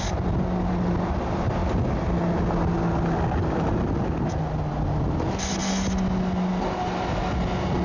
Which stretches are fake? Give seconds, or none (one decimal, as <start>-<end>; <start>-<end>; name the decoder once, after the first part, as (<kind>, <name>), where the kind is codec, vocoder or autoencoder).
none